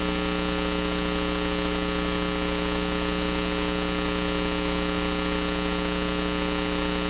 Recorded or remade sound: recorded